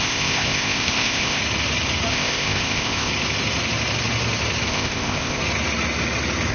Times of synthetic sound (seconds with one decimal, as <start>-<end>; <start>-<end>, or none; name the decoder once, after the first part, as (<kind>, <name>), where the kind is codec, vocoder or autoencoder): 0.0-1.4 (codec, ZipCodec); 2.1-3.1; 4.7-5.4

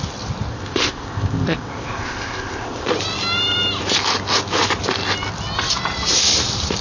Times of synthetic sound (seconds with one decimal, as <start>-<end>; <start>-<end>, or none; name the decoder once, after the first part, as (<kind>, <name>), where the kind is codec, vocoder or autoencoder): 0.5-2.9 (codec, ZipCodec)

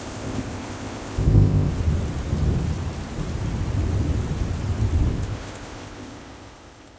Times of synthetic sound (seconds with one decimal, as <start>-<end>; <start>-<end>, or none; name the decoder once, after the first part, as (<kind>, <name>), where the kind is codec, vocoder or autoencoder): 0.0-1.7 (codec, ZipCodec); 5.1-7.0

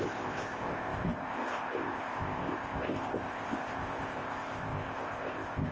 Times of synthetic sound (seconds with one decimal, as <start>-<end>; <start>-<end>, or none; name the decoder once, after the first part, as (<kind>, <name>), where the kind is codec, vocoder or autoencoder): 0.0-5.7 (codec, ZipCodec)

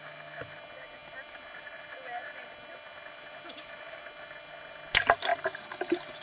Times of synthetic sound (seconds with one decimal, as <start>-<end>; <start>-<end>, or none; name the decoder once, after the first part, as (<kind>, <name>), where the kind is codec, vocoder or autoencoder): none

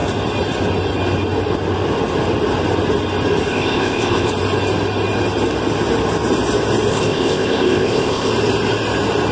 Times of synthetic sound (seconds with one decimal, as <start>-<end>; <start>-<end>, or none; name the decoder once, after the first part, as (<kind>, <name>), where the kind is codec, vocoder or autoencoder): 3.5-4.3 (codec, ZipCodec); 6.9-8.3

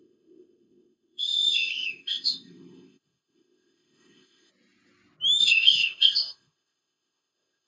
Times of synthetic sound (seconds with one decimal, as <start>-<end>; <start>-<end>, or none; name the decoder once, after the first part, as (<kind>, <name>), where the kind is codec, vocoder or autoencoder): 0.0-4.5 (codec, ZipCodec); 5.4-7.7

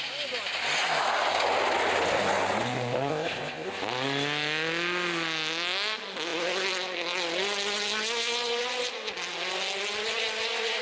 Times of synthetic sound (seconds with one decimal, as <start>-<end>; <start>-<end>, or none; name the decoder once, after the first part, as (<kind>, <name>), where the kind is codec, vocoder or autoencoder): 3.1-3.7 (codec, ZipCodec)